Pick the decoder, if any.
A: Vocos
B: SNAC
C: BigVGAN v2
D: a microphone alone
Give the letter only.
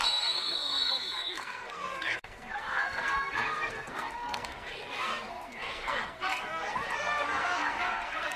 B